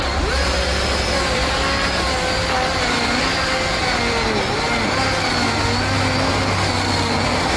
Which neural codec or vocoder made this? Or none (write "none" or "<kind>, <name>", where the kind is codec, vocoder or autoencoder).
none